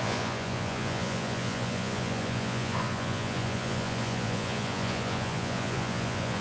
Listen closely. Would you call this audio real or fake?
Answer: fake